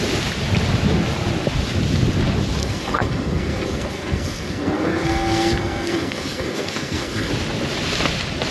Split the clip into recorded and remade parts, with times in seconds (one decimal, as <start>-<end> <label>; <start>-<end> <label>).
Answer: 0.0-2.6 recorded; 2.6-7.3 remade; 7.3-8.5 recorded